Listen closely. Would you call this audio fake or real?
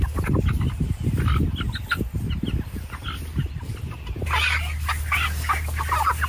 real